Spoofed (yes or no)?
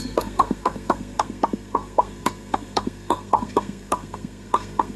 yes